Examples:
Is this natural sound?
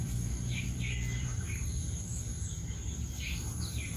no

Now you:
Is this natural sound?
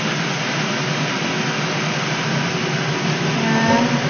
yes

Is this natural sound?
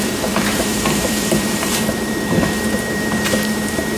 no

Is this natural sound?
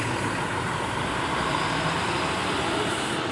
no